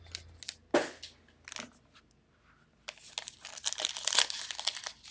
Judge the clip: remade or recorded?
recorded